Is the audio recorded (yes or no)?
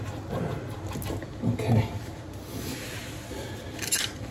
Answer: yes